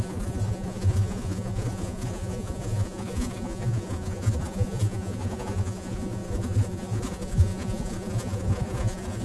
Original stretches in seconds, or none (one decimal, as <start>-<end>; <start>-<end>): none